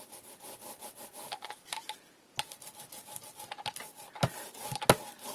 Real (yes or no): yes